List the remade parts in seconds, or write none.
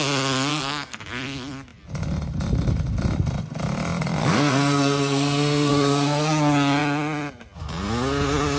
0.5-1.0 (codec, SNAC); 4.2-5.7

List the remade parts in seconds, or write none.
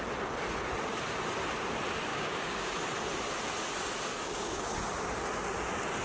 2.1-2.7 (codec, DAC); 4.1-4.6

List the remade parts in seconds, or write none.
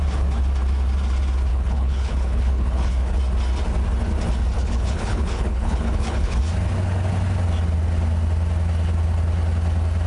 1.5-3.2 (codec, HILCodec); 4.6-6.4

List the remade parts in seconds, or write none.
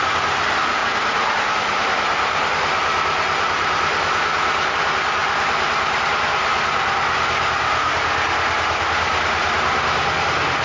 5.2-6.0 (vocoder, BigVGAN v2)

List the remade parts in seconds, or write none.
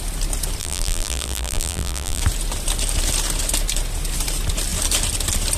0.6-2.2 (vocoder, BigVGAN v2)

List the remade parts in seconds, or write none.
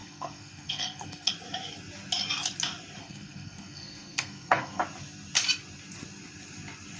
0.0-1.3 (codec, SNAC); 3.0-4.8